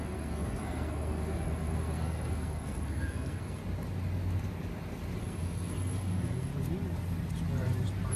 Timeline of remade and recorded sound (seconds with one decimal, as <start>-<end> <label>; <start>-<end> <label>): 0.0-3.6 remade; 3.6-5.2 recorded; 5.2-6.5 remade; 6.5-8.2 recorded